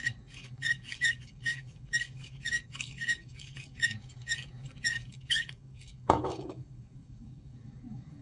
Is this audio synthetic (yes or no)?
yes